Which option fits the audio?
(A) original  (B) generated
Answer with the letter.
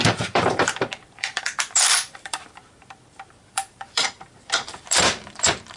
B